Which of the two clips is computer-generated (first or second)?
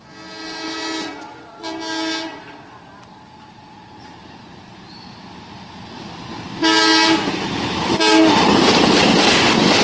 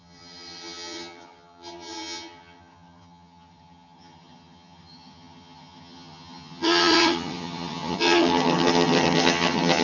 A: second